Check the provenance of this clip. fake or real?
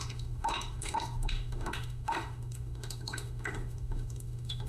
fake